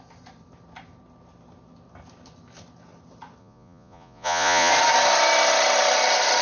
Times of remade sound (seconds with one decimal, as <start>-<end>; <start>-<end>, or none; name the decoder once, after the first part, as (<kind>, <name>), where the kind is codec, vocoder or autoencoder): 3.4-4.7 (vocoder, Vocos)